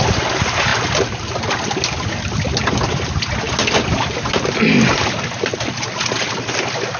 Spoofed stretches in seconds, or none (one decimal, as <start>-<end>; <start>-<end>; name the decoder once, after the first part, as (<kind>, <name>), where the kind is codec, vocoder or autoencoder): none